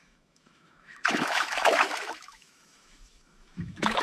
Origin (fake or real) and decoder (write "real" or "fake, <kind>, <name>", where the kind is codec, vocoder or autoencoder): fake, autoencoder, DAC-VAE